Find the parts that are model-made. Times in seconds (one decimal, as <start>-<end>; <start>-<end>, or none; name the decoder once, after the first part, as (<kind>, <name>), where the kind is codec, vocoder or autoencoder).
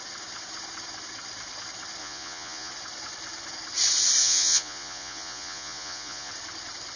2.0-2.7 (vocoder, Vocos); 4.2-6.3